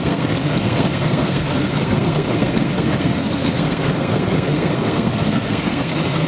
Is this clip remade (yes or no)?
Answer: yes